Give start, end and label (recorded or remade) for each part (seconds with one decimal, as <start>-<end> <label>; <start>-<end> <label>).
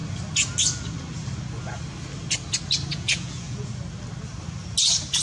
0.0-2.9 recorded; 2.9-3.8 remade; 3.8-5.2 recorded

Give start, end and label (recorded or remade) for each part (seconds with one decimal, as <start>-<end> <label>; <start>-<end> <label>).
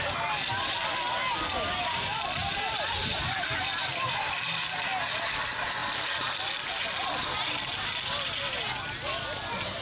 0.0-9.8 recorded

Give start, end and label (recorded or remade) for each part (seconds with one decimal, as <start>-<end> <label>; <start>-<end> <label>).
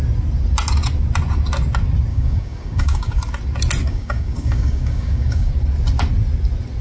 0.0-2.1 recorded; 2.1-3.2 remade; 3.2-3.8 recorded; 3.8-5.5 remade; 5.5-6.8 recorded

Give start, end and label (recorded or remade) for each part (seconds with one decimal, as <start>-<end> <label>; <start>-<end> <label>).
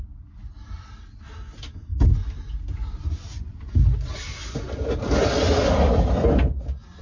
0.0-7.0 recorded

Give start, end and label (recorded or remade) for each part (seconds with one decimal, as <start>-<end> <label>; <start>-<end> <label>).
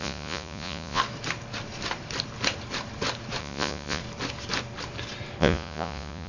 0.0-1.0 remade; 1.0-3.4 recorded; 3.4-4.0 remade; 4.0-5.4 recorded; 5.4-6.3 remade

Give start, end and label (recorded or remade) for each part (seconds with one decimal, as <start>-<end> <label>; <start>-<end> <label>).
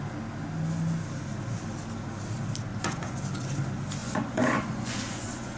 0.0-2.7 recorded; 2.7-3.2 remade; 3.2-4.0 recorded; 4.0-5.6 remade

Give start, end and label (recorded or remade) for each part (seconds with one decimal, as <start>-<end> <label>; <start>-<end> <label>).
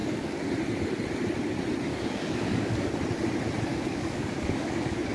0.0-0.5 remade; 0.5-1.9 recorded; 1.9-2.9 remade; 2.9-3.7 recorded; 3.7-5.1 remade